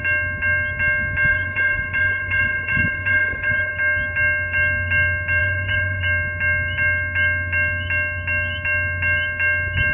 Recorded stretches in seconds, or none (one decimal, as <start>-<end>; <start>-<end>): 0.0-1.3; 3.7-5.4; 6.0-9.9